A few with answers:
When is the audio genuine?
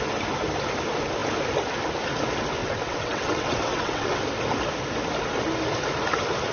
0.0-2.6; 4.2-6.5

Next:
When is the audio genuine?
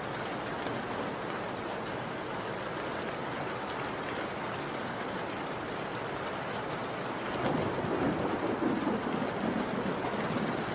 0.0-10.7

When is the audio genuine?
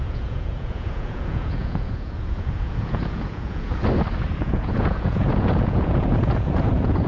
3.8-4.4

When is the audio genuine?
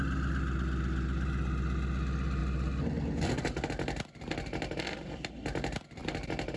0.0-6.6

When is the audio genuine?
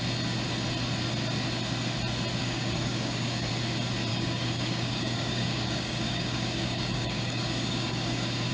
0.0-2.4; 3.5-4.1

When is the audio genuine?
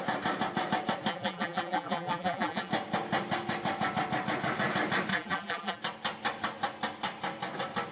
0.0-1.1; 2.7-5.1; 5.8-7.9